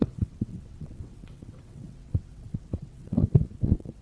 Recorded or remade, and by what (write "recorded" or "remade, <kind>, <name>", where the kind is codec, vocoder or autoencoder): remade, vocoder, WaveNeXt